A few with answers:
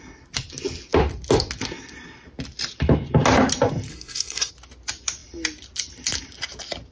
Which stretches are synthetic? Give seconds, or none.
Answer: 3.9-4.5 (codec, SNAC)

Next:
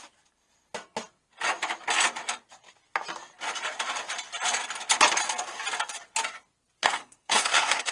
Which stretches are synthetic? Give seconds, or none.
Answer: 6.8-7.9 (codec, SNAC)

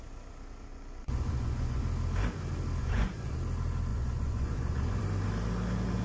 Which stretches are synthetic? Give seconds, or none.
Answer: 0.7-1.8 (vocoder, Vocos); 2.8-3.4; 3.9-5.0

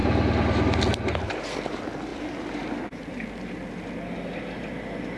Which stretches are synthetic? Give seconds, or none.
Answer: none

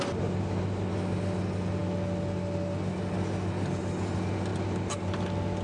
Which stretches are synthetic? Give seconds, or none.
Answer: none

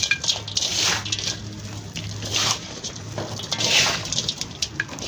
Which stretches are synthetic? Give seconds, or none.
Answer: 2.3-2.9 (vocoder, BigVGAN v2)

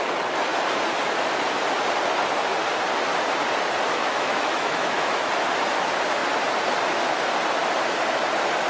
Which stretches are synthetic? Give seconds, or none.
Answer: 3.9-5.3 (autoencoder, DAC-VAE)

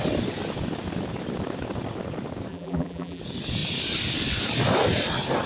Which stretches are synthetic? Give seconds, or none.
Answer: 2.5-3.2 (vocoder, BigVGAN v2)